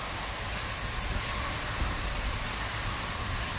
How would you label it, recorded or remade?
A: recorded